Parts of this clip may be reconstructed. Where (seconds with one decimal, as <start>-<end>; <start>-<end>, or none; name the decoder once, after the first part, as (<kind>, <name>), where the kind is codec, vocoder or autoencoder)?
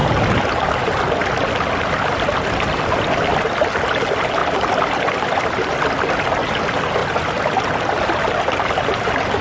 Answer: 7.0-8.0 (vocoder, BigVGAN v2)